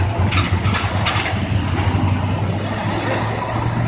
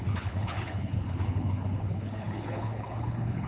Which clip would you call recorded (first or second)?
first